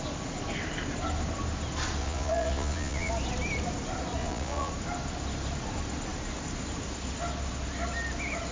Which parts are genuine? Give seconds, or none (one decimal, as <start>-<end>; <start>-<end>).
0.0-2.0; 3.1-4.2; 4.7-8.5